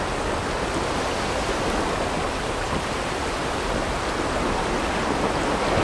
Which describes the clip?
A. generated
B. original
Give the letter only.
B